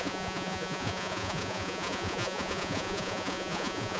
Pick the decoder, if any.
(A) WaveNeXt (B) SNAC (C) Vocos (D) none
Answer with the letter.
C